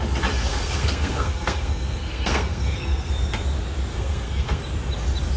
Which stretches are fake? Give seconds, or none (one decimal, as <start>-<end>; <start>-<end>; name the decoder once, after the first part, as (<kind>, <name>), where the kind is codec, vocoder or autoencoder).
0.4-3.1 (codec, SNAC); 3.9-4.6